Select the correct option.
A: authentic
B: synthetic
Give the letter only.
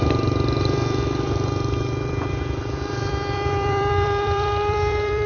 B